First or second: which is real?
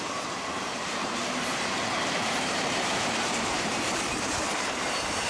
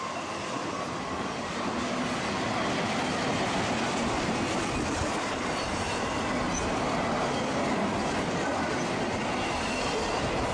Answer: second